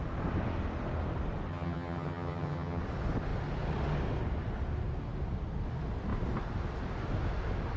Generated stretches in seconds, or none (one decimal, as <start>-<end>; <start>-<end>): 1.5-2.8